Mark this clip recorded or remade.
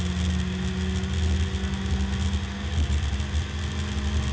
recorded